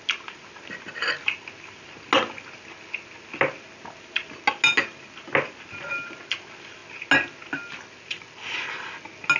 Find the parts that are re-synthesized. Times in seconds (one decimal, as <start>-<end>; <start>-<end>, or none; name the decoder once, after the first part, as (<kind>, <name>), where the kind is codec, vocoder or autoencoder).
none